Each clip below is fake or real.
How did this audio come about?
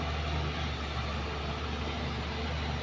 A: real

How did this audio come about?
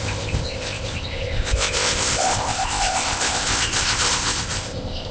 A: fake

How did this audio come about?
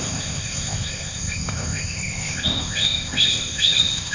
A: fake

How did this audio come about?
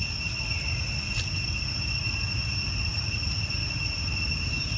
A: real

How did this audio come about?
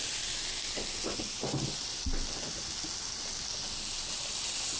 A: real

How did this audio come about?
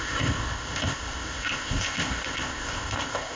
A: fake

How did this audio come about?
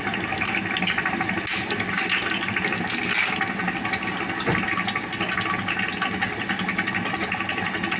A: real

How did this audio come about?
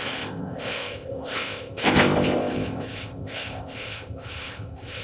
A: fake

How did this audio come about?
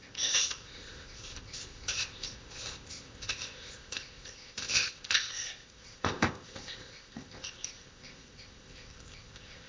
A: fake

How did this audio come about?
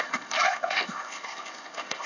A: fake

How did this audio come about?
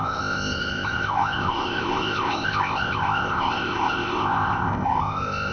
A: fake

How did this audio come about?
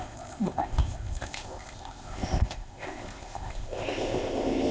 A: fake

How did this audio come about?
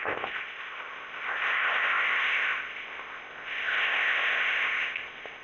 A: fake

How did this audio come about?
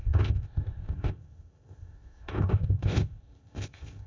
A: fake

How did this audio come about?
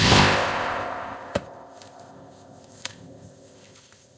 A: fake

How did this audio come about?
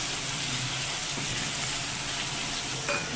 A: real